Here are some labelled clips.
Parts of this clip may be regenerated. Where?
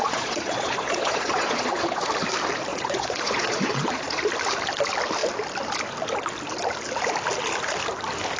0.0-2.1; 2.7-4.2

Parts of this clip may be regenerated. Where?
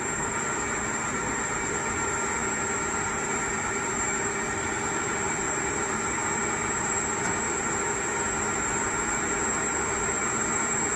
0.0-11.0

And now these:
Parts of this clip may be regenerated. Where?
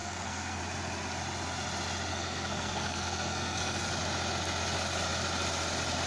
0.0-0.6; 2.1-3.9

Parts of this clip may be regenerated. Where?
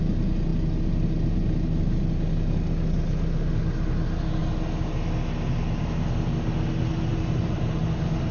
7.1-7.8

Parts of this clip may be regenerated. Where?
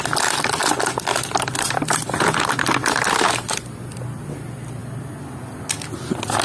none